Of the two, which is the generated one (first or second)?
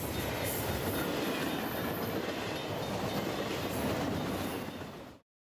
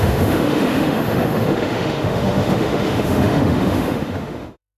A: second